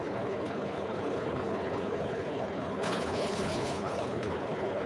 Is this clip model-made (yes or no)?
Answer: yes